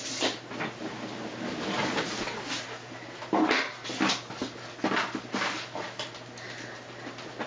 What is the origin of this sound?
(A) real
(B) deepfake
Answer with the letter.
A